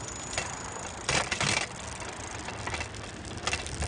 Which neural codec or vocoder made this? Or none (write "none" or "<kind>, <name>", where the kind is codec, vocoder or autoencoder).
none